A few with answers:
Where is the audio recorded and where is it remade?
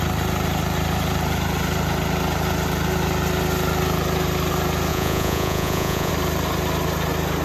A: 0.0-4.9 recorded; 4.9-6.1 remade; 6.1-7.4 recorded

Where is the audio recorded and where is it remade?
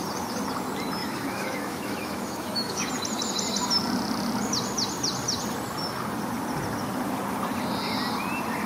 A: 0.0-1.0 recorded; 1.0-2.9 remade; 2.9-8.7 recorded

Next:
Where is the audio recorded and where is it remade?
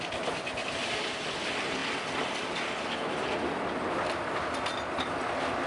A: 0.0-5.7 recorded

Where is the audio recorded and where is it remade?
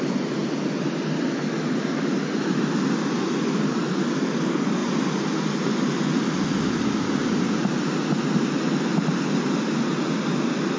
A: 0.0-10.8 recorded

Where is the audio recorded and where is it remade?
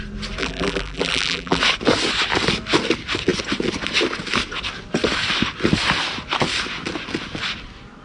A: 0.0-0.4 recorded; 0.4-1.6 remade; 1.6-8.0 recorded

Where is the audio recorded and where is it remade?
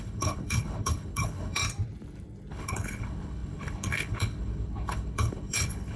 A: 0.0-1.6 remade; 1.6-2.5 recorded; 2.5-6.0 remade